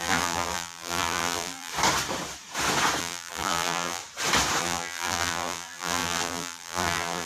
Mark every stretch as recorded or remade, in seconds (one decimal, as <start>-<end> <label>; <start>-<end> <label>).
0.0-1.7 remade; 1.7-3.0 recorded; 3.0-4.0 remade; 4.0-4.6 recorded; 4.6-7.3 remade